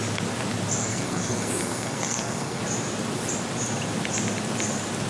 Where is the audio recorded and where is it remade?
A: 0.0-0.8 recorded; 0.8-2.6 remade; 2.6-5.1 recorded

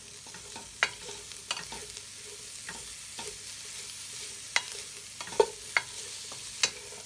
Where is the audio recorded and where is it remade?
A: 0.0-7.1 recorded

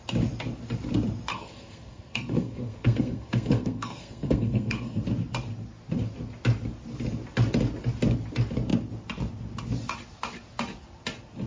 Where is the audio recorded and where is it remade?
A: 0.0-1.3 recorded; 1.3-5.0 remade; 5.0-11.5 recorded

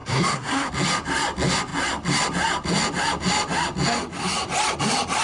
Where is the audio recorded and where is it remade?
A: 0.0-0.7 remade; 0.7-5.2 recorded

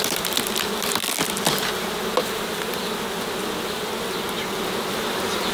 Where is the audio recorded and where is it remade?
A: 0.0-5.5 recorded

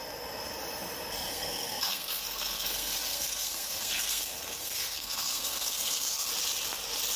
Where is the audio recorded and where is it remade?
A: 0.0-1.3 recorded; 1.3-6.3 remade; 6.3-7.2 recorded